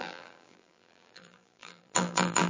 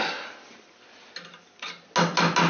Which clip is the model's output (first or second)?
first